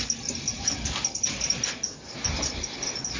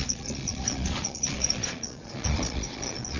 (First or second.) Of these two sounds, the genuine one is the first